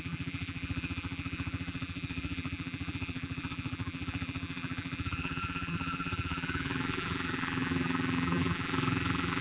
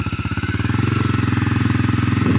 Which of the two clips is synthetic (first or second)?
first